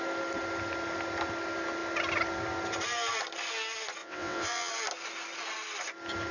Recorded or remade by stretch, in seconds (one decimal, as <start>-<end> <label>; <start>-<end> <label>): 0.0-4.0 recorded; 4.0-4.7 remade; 4.7-6.3 recorded